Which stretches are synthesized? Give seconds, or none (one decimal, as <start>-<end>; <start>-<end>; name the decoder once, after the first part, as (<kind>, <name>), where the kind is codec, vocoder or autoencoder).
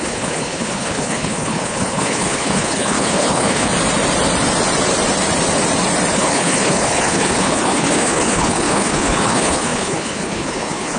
0.0-3.7 (codec, HILCodec); 6.1-11.0